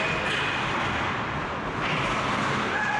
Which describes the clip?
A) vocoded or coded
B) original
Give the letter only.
B